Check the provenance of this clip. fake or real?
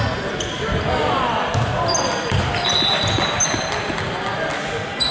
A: real